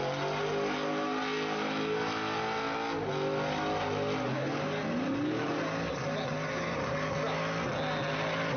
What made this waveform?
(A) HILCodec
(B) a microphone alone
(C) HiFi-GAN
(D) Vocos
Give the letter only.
B